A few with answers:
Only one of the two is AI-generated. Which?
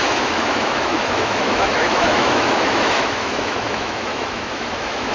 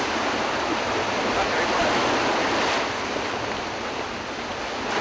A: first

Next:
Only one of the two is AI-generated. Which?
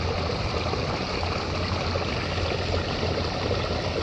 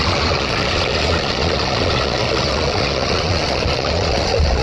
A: second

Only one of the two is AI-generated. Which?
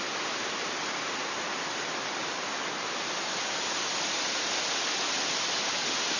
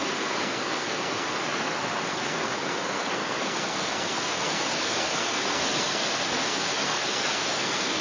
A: second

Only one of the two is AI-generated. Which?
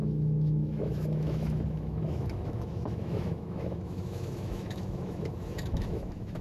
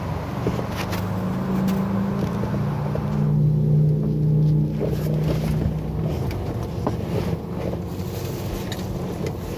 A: first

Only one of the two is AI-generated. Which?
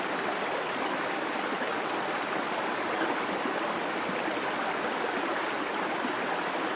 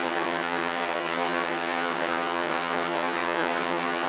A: second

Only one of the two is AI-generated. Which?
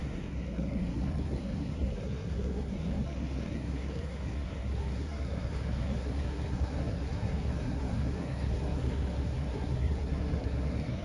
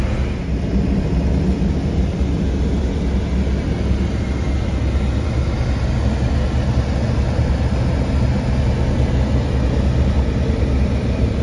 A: first